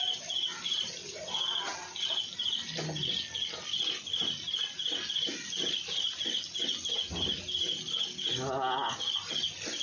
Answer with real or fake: real